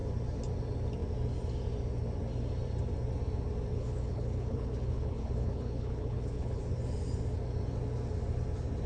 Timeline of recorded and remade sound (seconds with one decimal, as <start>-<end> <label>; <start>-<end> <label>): 0.0-3.7 recorded; 3.7-6.6 remade; 6.6-8.9 recorded